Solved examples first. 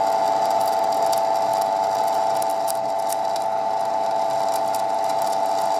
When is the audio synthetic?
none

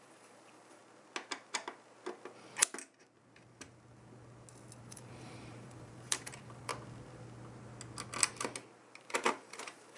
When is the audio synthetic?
0.0-0.8 (vocoder, BigVGAN v2); 4.8-6.7; 9.0-10.0

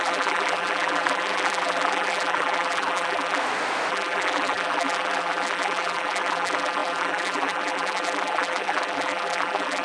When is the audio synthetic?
0.0-3.4 (vocoder, BigVGAN v2); 3.9-9.8

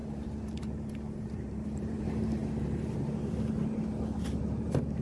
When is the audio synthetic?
0.0-2.4 (vocoder, BigVGAN v2)

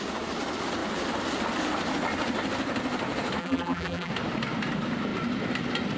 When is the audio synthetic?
3.4-4.1 (vocoder, BigVGAN v2)

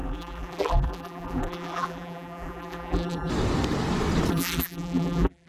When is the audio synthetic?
0.0-3.3 (vocoder, BigVGAN v2); 4.3-5.5